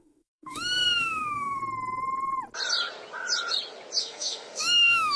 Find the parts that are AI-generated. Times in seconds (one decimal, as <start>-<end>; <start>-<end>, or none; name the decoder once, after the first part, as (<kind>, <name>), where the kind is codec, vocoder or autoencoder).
0.0-1.6 (autoencoder, DAC-VAE); 4.0-5.2